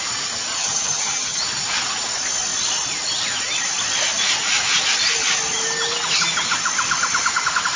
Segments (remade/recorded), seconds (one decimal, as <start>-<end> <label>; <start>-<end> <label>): 0.0-0.5 recorded; 0.5-1.4 remade; 1.4-7.8 recorded